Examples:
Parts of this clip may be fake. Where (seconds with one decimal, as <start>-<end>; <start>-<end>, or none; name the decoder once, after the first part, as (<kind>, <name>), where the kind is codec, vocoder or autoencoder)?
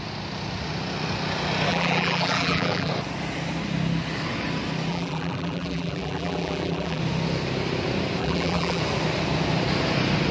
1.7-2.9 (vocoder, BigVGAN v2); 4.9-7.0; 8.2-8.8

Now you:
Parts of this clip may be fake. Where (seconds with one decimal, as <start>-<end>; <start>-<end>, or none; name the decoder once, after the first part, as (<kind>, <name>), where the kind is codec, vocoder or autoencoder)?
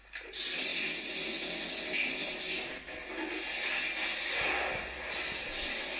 none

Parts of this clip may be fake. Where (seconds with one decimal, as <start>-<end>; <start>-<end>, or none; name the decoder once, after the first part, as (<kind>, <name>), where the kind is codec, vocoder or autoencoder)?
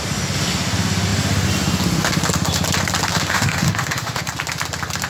3.1-4.2 (autoencoder, DAC-VAE)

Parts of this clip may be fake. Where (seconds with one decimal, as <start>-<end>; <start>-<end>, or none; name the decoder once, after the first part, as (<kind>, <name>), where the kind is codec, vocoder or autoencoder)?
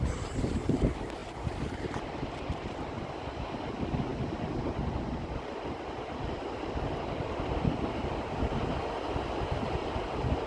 none